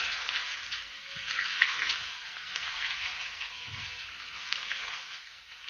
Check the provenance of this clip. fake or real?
fake